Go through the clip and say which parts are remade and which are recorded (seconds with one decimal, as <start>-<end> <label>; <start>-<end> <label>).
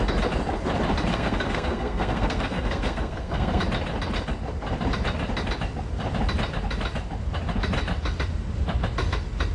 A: 0.0-1.1 recorded; 1.1-3.6 remade; 3.6-9.5 recorded